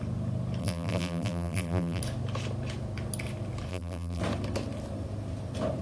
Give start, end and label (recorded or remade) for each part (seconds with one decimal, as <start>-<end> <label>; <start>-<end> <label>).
0.0-0.6 recorded; 0.6-2.0 remade; 2.0-3.7 recorded; 3.7-4.2 remade; 4.2-5.8 recorded